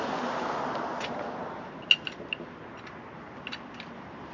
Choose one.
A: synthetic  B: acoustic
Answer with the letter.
B